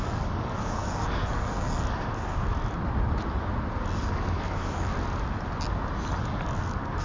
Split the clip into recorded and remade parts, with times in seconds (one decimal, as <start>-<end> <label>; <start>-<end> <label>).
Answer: 0.0-2.5 remade; 2.5-4.0 recorded; 4.0-4.9 remade; 4.9-6.2 recorded; 6.2-7.0 remade